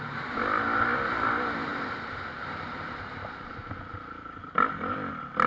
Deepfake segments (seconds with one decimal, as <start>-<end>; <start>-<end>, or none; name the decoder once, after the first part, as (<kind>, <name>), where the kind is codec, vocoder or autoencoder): 1.7-3.1 (vocoder, BigVGAN v2)